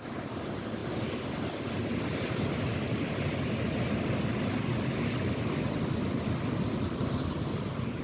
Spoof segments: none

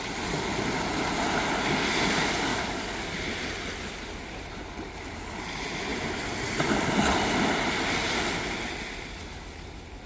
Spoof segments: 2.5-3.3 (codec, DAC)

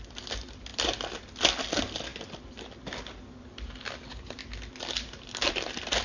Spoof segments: none

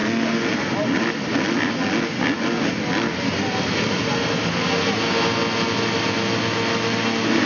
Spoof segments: none

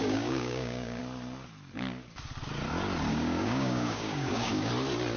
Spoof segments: 0.0-1.0 (codec, DAC); 3.1-4.7

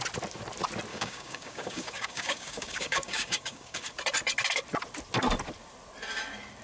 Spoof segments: 0.9-3.9 (codec, DAC)